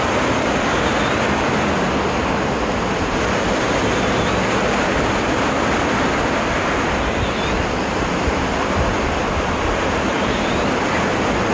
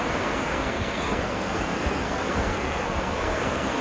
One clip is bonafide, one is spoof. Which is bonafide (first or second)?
first